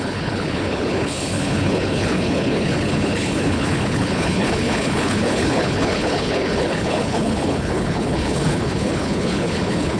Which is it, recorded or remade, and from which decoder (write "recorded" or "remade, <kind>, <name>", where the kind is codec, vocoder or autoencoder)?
remade, codec, HILCodec